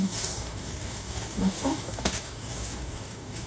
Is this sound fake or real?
fake